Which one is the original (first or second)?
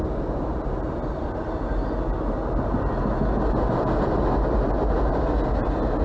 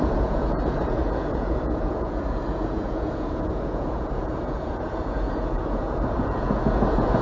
first